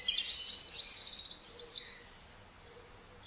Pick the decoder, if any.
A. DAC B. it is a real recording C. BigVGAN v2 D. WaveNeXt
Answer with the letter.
B